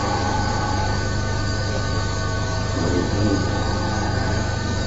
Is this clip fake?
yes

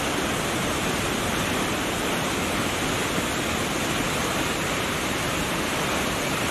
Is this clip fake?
yes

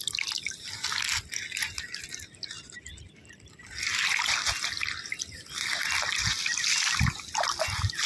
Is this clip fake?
no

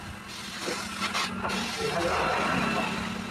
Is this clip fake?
no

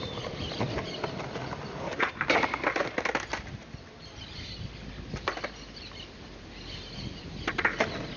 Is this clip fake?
no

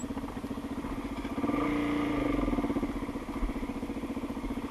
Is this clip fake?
no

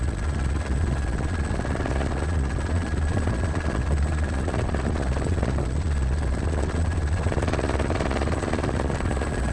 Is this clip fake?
yes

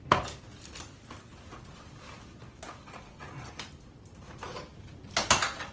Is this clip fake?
no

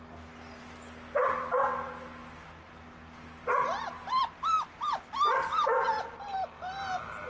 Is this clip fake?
no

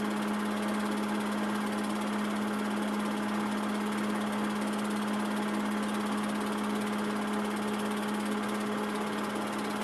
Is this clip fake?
no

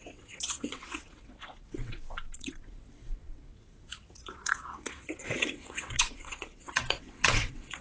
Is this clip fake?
yes